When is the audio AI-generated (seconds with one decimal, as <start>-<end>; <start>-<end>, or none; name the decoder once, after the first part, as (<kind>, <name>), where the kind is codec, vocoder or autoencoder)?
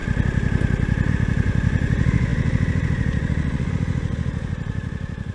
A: 1.1-5.3 (vocoder, Vocos)